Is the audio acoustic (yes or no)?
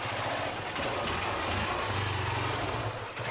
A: yes